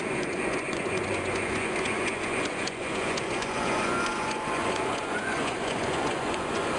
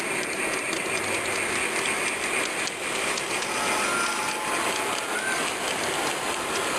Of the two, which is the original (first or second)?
second